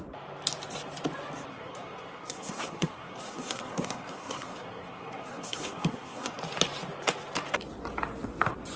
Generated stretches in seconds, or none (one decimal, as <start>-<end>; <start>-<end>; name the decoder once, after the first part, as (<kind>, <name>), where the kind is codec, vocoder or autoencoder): 1.5-6.4 (codec, SNAC)